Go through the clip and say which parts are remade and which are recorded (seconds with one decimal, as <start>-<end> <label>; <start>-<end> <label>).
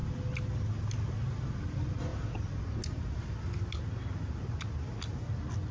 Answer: 0.0-5.7 recorded